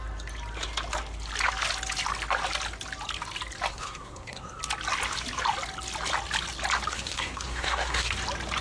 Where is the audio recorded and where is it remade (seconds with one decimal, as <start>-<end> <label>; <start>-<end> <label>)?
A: 0.0-3.7 recorded; 3.7-4.6 remade; 4.6-6.9 recorded; 6.9-8.1 remade; 8.1-8.6 recorded